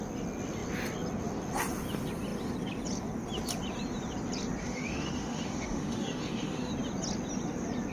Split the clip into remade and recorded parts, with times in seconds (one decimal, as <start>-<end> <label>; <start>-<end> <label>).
0.0-4.6 recorded; 4.6-6.7 remade; 6.7-7.9 recorded